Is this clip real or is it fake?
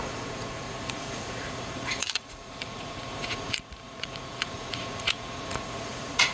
fake